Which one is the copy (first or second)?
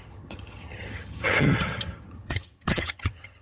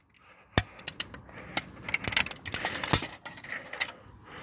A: first